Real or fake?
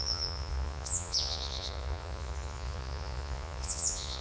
fake